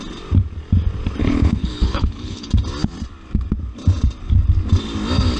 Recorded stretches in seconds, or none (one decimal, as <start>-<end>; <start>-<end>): 0.0-1.2; 2.5-5.4